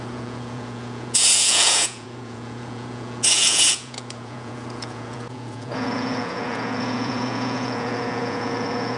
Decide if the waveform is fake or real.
fake